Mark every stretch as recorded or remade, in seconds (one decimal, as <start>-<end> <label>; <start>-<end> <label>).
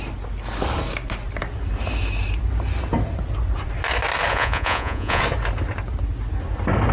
0.0-4.3 recorded; 4.3-5.2 remade; 5.2-6.9 recorded